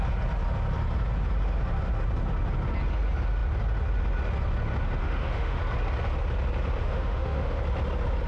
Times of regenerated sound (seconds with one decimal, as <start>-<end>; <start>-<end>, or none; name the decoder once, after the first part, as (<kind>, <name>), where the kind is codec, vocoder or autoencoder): 5.0-5.6 (autoencoder, DAC-VAE); 6.8-7.6